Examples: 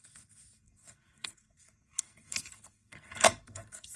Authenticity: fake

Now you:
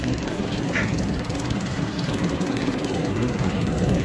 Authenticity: fake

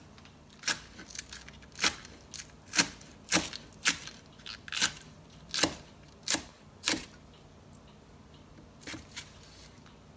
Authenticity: real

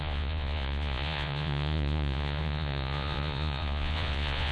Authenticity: fake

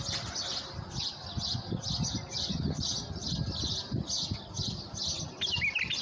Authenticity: real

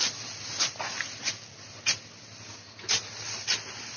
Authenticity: real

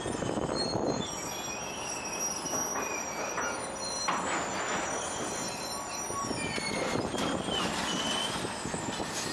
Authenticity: real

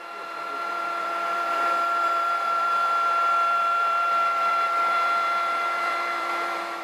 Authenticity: fake